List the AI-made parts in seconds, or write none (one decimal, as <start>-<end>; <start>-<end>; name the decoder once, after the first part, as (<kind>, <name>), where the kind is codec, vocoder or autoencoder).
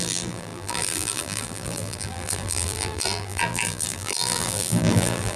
0.0-5.4 (vocoder, BigVGAN v2)